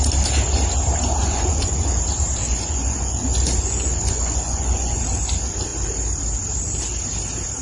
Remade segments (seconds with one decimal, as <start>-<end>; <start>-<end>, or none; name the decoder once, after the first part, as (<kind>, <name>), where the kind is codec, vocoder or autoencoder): 1.2-2.0 (vocoder, Vocos); 2.4-5.0